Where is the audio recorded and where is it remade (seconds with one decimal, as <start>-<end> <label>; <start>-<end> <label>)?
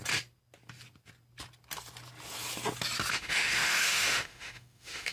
0.0-3.1 recorded; 3.1-5.1 remade